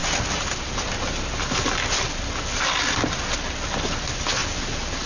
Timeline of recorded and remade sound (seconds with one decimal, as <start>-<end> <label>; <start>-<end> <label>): 0.0-5.1 recorded